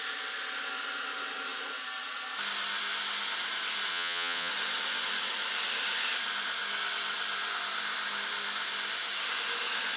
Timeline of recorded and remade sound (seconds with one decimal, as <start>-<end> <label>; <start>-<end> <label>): 0.0-3.9 recorded; 3.9-4.5 remade; 4.5-10.0 recorded